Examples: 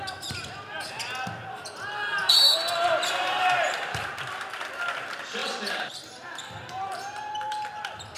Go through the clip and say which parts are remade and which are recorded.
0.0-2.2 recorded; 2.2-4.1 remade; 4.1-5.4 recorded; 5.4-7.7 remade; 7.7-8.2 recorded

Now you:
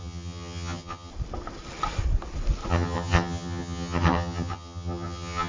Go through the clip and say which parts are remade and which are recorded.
0.0-1.1 remade; 1.1-2.7 recorded; 2.7-5.5 remade

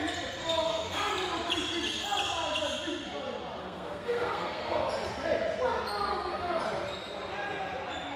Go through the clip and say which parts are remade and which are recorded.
0.0-0.4 recorded; 0.4-1.1 remade; 1.1-3.6 recorded; 3.6-4.9 remade; 4.9-6.1 recorded; 6.1-6.6 remade; 6.6-8.2 recorded

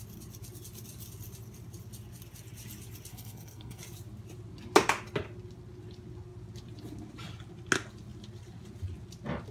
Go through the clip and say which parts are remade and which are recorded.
0.0-3.1 recorded; 3.1-3.8 remade; 3.8-9.5 recorded

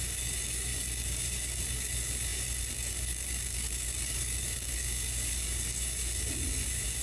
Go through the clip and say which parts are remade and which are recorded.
0.0-7.0 remade

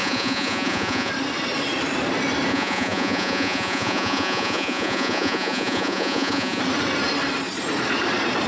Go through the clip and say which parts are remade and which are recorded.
0.0-1.1 remade; 1.1-2.5 recorded; 2.5-6.6 remade; 6.6-8.5 recorded